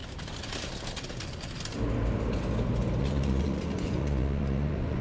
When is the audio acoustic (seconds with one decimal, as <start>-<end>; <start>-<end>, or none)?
0.0-3.0